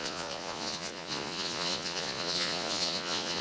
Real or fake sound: fake